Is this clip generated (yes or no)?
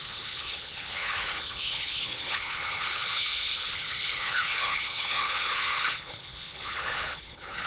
yes